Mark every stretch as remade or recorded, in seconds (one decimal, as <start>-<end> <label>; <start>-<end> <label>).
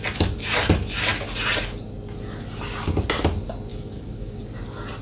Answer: 0.0-3.7 recorded; 3.7-4.4 remade; 4.4-5.0 recorded